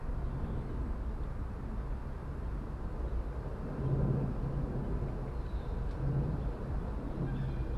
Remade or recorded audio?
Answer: recorded